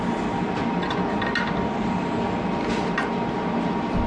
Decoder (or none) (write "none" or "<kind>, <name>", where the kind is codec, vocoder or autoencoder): none